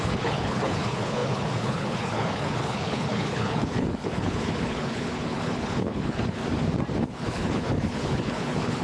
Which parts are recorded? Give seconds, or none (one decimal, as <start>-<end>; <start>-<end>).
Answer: 6.4-7.0